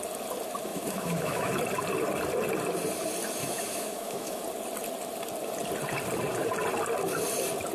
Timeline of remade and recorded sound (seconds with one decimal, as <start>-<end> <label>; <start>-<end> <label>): 0.0-0.7 recorded; 0.7-1.5 remade; 1.5-3.4 recorded; 3.4-4.4 remade; 4.4-7.7 recorded